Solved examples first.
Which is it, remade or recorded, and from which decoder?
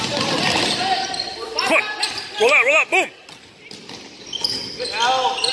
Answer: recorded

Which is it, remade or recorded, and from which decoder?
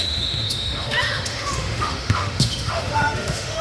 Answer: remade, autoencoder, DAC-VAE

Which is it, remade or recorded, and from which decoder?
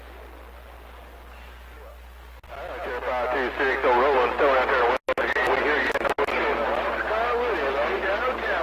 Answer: recorded